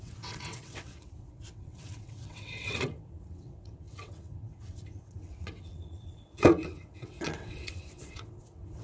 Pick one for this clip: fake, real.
fake